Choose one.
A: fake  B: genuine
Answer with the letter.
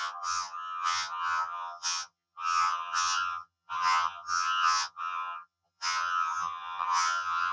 A